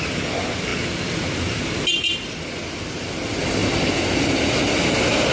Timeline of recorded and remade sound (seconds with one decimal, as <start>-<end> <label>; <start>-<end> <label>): 0.0-5.3 recorded